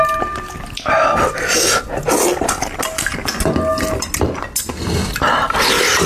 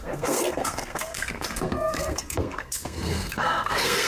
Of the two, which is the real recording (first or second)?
first